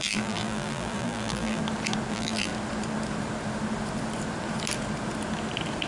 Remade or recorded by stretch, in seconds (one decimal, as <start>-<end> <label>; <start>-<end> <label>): 0.0-1.6 remade; 1.6-2.1 recorded; 2.1-2.5 remade; 2.5-5.9 recorded